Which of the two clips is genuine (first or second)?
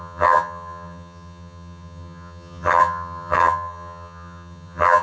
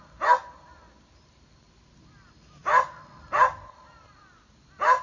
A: second